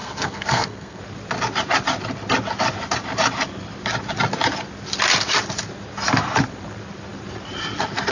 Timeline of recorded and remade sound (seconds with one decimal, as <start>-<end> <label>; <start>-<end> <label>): 0.0-1.0 remade; 1.0-8.1 recorded